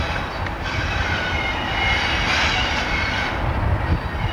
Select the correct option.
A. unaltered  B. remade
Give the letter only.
A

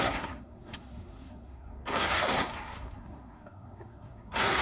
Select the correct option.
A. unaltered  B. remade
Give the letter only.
B